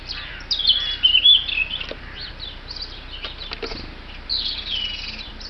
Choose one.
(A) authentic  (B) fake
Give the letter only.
A